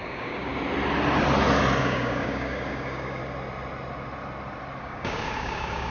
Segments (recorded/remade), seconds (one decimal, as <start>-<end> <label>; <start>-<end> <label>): 0.0-0.5 remade; 0.5-1.8 recorded; 1.8-3.2 remade; 3.2-4.8 recorded; 4.8-5.9 remade